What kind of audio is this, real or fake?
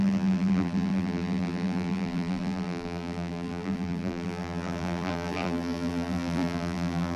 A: fake